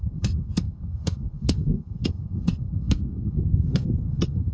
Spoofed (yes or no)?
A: yes